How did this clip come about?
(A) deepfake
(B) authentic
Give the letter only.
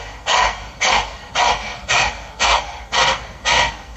A